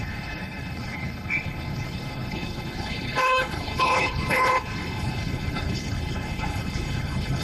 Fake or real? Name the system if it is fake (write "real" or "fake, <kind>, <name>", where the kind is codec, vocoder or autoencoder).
fake, codec, HILCodec